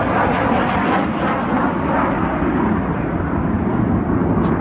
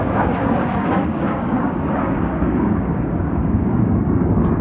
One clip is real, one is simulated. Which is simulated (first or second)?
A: second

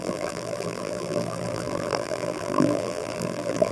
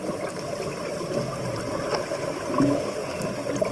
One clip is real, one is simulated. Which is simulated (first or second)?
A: first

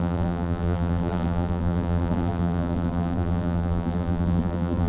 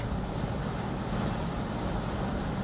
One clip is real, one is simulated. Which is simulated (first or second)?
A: first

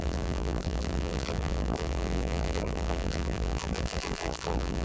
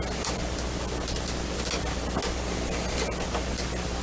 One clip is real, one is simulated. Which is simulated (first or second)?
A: first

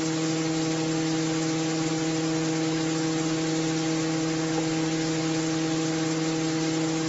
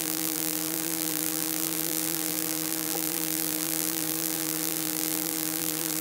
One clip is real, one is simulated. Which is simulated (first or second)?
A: second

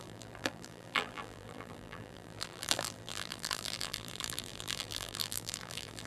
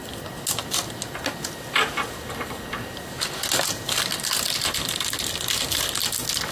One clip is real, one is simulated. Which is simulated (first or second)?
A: first